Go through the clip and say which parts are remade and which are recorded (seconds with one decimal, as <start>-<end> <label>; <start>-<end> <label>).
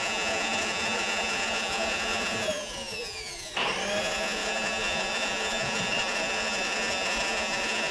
0.0-3.5 remade; 3.5-4.0 recorded; 4.0-7.9 remade